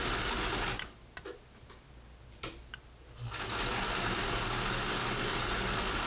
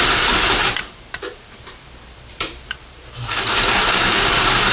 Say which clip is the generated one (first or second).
second